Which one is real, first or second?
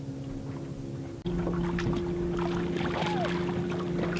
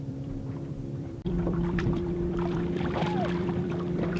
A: first